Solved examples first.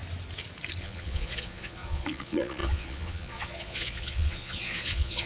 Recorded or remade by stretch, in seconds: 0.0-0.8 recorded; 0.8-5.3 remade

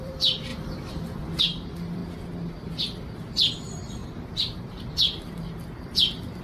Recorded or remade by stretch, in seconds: 0.0-0.5 remade; 0.5-1.4 recorded; 1.4-2.0 remade; 2.0-3.6 recorded; 3.6-4.0 remade; 4.0-6.4 recorded

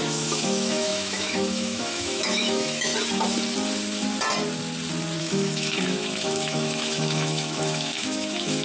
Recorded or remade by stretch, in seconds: 0.0-2.9 remade; 2.9-5.2 recorded; 5.2-8.6 remade

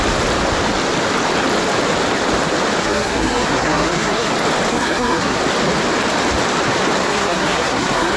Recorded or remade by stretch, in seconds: 0.0-2.8 recorded; 2.8-4.3 remade; 4.3-4.7 recorded; 4.7-5.4 remade; 5.4-7.1 recorded; 7.1-8.2 remade